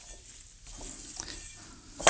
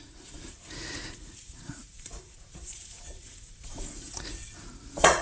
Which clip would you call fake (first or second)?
second